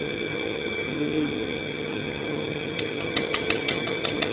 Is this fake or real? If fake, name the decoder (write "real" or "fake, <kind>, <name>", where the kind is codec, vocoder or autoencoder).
fake, vocoder, HiFi-GAN